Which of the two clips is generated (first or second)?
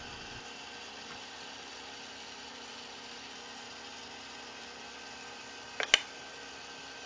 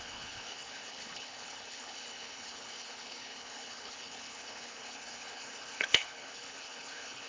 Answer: second